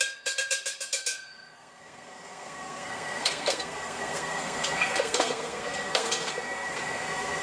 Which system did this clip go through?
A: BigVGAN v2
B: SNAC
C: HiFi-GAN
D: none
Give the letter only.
B